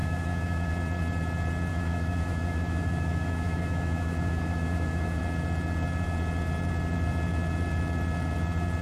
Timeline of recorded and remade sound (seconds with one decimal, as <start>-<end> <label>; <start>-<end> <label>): 0.0-0.7 remade; 0.7-1.7 recorded; 1.7-5.2 remade; 5.2-8.8 recorded